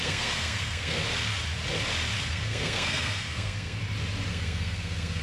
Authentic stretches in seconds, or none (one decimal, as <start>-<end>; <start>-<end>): 1.0-2.3; 3.8-4.3

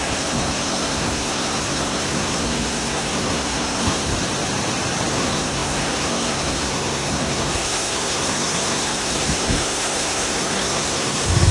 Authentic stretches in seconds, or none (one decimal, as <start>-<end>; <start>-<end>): 4.1-5.1